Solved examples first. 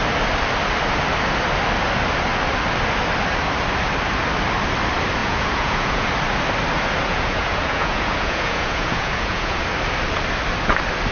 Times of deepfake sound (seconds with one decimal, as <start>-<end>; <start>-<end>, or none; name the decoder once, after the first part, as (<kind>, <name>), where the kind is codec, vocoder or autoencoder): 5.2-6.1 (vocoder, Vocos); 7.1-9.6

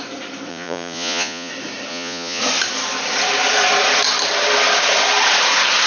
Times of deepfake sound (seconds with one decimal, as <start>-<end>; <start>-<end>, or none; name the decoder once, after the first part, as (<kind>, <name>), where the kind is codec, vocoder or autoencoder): 0.5-1.5 (vocoder, Vocos); 1.9-2.4

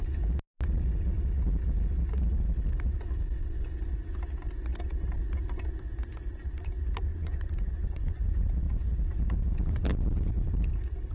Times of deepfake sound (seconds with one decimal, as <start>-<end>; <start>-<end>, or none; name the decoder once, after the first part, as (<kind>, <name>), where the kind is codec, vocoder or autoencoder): 7.1-8.5 (vocoder, Vocos)